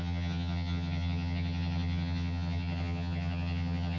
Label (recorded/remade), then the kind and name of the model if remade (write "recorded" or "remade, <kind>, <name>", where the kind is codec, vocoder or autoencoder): remade, vocoder, HiFi-GAN